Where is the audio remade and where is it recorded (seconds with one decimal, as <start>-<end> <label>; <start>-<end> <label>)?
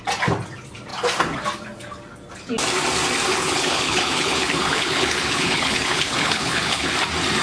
0.0-3.3 recorded; 3.3-6.9 remade; 6.9-7.4 recorded